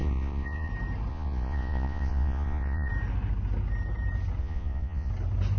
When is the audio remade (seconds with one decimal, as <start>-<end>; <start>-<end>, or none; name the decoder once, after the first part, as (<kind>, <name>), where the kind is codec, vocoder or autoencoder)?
0.0-0.7 (vocoder, Vocos); 1.1-2.9; 4.4-5.1